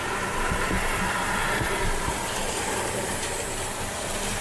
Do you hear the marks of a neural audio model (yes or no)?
yes